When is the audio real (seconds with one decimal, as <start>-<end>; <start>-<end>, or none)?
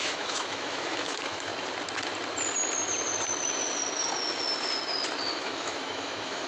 1.5-5.4